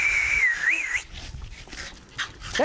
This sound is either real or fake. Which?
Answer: real